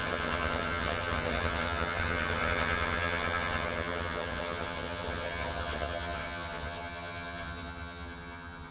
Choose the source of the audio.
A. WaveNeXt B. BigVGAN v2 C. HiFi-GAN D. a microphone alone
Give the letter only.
C